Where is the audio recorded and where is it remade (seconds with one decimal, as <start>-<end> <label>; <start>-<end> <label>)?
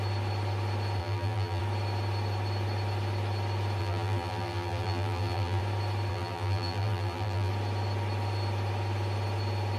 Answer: 0.0-1.0 recorded; 1.0-1.6 remade; 1.6-3.8 recorded; 3.8-5.6 remade; 5.6-6.1 recorded; 6.1-7.5 remade; 7.5-9.8 recorded